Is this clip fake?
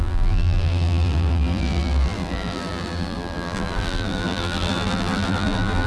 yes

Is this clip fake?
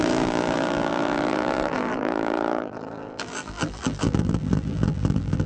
yes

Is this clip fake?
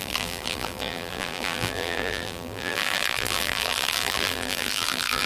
yes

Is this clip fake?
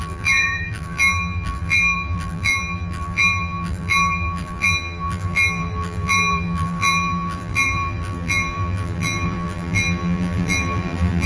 yes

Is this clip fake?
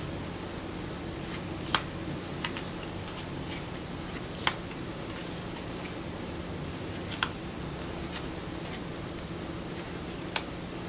no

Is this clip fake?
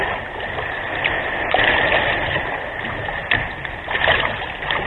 yes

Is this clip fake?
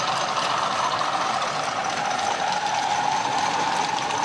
no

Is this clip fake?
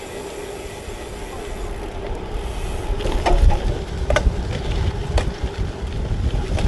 no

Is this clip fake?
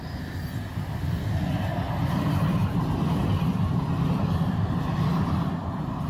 no